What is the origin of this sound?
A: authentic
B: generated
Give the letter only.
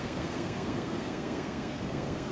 B